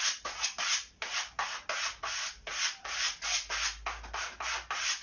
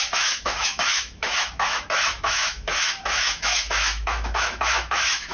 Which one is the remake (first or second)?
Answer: second